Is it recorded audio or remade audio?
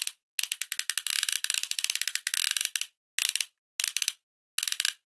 recorded